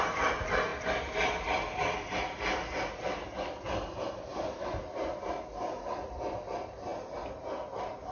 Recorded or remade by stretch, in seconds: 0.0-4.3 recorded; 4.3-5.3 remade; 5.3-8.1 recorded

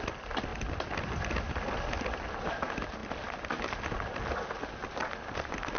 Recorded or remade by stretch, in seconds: 0.0-5.8 recorded

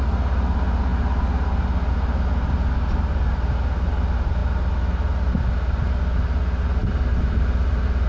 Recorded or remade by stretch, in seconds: 0.0-8.1 recorded

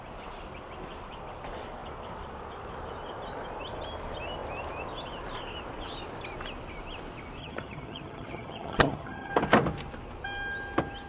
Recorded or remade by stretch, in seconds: 0.0-7.4 recorded; 7.4-9.3 remade; 9.3-11.1 recorded

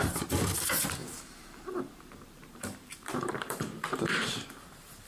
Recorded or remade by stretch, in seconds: 0.0-5.1 remade